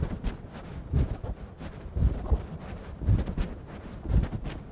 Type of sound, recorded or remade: recorded